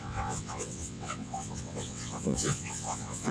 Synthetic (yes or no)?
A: yes